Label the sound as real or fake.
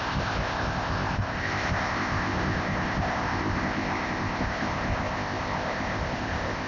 fake